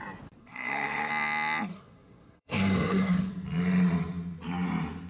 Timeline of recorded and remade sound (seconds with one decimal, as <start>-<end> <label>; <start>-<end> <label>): 0.0-0.4 recorded; 0.4-1.1 remade; 1.1-1.7 recorded; 1.7-3.3 remade; 3.3-5.1 recorded